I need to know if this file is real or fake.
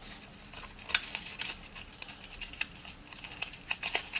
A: real